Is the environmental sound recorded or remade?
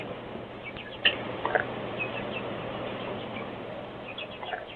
recorded